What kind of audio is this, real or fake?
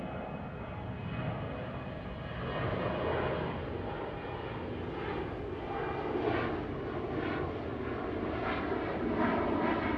real